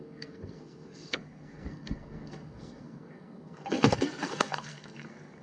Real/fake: fake